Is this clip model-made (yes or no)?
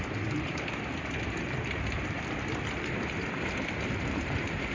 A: yes